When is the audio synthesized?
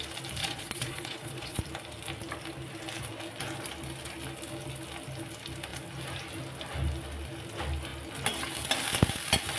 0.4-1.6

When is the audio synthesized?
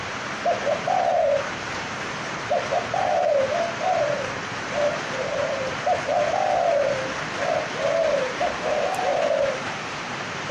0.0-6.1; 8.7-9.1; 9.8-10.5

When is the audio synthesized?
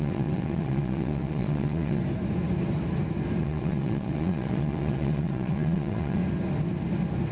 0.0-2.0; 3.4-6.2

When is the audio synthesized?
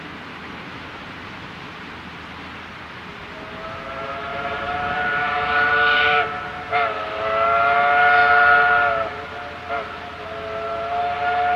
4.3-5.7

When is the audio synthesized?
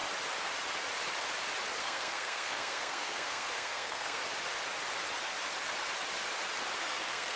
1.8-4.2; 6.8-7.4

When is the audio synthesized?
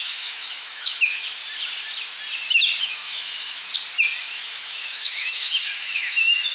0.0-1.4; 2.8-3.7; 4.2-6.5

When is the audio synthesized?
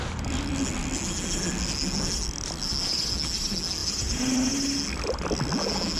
3.8-4.5